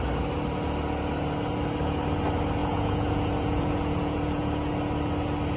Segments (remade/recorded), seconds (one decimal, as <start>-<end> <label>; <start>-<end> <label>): 0.0-2.6 recorded; 2.6-4.7 remade; 4.7-5.6 recorded